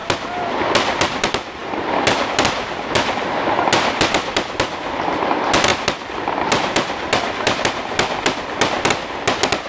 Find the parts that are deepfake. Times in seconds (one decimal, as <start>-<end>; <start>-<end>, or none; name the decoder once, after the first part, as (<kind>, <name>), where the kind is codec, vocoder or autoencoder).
none